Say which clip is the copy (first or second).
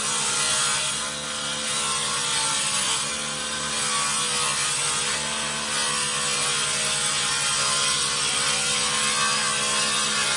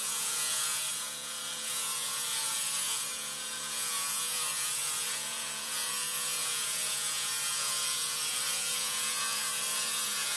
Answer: second